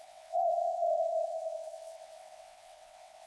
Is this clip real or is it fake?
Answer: fake